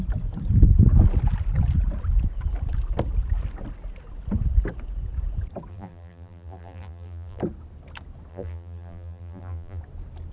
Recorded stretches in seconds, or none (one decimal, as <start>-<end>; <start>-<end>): 0.0-5.7; 7.4-8.3; 9.8-10.3